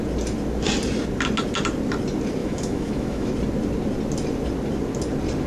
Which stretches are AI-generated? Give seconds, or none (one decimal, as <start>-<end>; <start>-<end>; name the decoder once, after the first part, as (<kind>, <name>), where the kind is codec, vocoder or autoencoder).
2.4-3.3 (autoencoder, DAC-VAE)